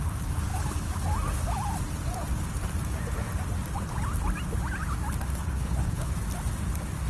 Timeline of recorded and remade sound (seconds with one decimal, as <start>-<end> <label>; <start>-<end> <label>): 0.0-5.4 recorded; 5.4-6.1 remade; 6.1-7.1 recorded